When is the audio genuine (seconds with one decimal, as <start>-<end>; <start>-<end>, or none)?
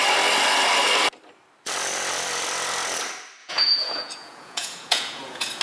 0.0-3.4